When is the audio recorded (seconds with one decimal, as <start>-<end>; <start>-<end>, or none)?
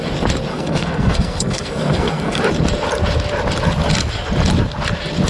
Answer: 0.0-0.5; 2.4-5.3